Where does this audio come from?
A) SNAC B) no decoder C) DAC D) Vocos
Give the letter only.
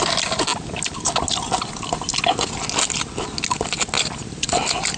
B